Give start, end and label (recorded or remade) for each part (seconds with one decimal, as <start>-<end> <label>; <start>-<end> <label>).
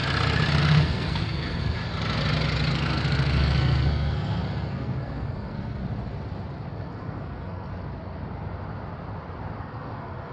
0.0-0.6 recorded; 0.6-1.8 remade; 1.8-2.7 recorded; 2.7-5.8 remade; 5.8-6.7 recorded; 6.7-7.7 remade; 7.7-9.6 recorded; 9.6-10.3 remade